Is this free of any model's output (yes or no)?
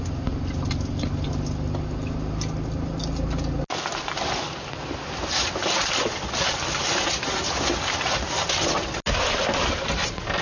yes